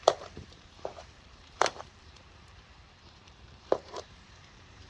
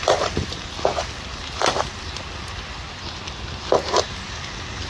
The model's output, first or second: first